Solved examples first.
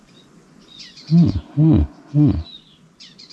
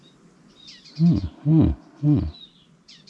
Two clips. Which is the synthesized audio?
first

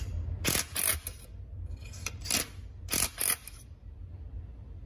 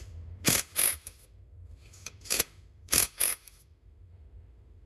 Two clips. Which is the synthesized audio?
second